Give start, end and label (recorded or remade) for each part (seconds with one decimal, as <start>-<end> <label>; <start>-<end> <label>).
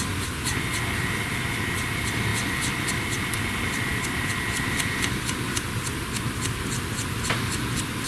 0.0-8.1 recorded